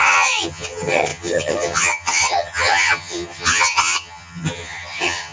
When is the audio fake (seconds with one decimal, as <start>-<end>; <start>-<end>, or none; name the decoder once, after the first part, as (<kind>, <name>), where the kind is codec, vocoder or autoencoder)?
0.0-5.3 (vocoder, HiFi-GAN)